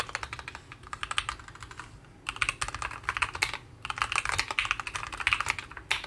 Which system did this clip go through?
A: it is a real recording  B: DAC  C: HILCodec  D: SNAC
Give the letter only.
A